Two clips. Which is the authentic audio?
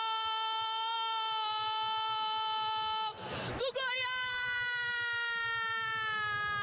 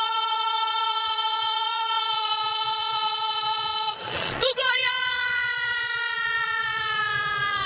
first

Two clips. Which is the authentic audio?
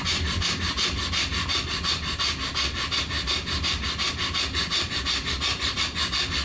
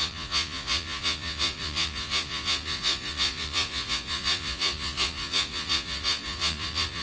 first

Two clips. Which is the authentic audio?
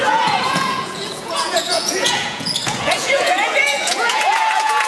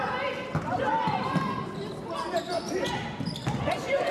second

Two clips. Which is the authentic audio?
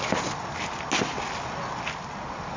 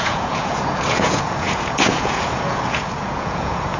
first